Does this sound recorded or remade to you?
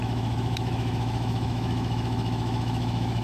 remade